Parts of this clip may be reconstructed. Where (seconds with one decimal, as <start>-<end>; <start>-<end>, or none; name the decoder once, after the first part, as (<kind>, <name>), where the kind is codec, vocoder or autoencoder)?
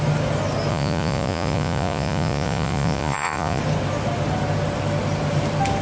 0.7-3.6 (vocoder, Vocos)